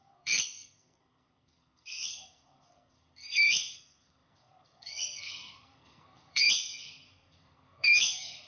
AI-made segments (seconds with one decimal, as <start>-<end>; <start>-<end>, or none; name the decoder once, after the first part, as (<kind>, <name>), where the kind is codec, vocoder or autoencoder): 0.0-8.5 (codec, SNAC)